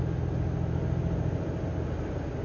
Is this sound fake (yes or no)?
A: no